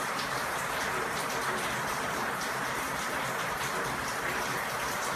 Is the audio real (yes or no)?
no